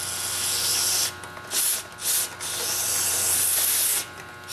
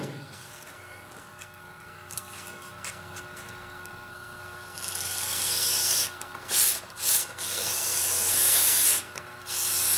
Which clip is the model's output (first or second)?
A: second